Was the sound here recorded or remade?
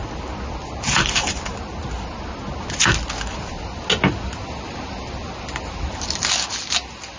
recorded